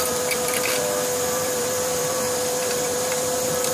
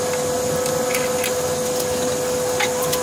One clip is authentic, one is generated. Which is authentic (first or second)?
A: second